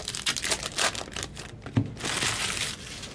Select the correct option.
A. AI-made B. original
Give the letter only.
B